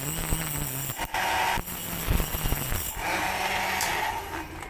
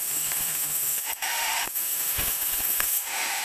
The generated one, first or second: second